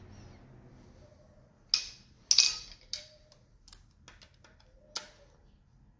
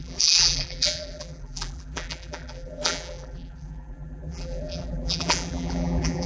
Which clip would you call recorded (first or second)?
first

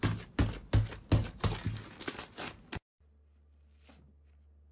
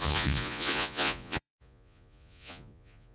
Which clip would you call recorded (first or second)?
first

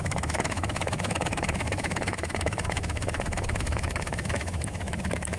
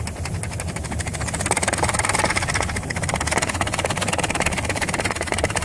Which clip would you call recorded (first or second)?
second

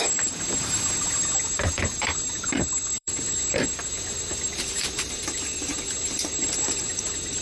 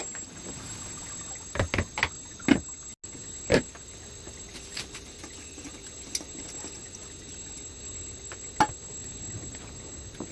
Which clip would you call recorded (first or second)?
second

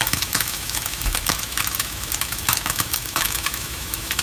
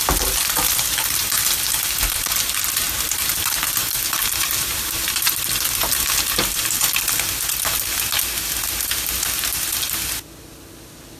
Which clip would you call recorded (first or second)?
second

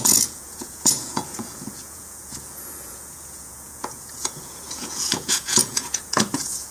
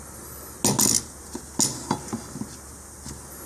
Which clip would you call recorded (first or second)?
second